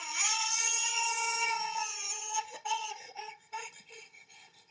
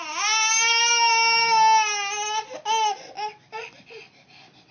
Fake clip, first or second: first